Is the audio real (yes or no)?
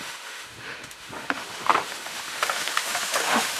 no